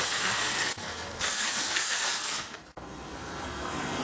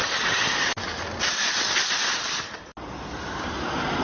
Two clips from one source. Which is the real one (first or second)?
second